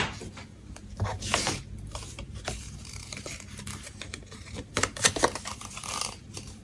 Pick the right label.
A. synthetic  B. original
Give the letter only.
A